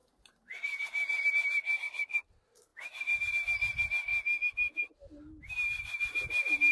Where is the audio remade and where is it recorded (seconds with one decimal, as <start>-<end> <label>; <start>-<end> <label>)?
0.0-1.3 remade; 1.3-2.7 recorded; 2.7-3.3 remade; 3.3-6.7 recorded